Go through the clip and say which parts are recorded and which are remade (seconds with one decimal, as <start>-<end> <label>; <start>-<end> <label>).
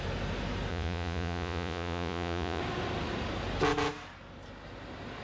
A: 0.0-0.7 recorded; 0.7-2.6 remade; 2.6-5.2 recorded